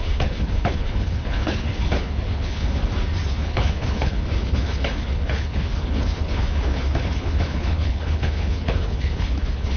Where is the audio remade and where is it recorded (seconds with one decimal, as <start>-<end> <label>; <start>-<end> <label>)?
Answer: 0.0-2.8 remade; 2.8-3.3 recorded; 3.3-9.8 remade